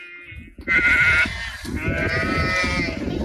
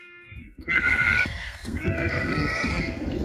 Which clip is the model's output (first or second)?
second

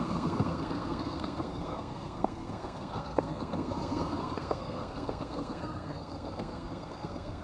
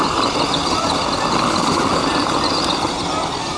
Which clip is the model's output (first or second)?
first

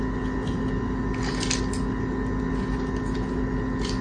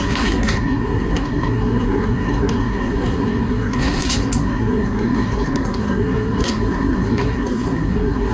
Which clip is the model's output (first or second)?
second